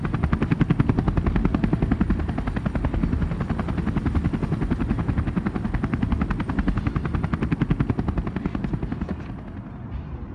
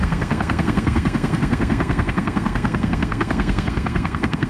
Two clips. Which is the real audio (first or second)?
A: first